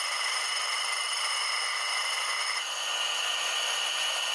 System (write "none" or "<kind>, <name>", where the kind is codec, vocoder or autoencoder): none